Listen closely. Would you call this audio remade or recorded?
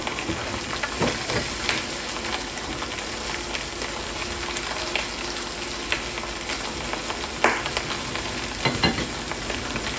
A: recorded